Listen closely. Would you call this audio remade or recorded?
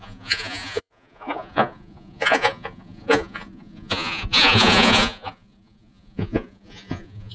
remade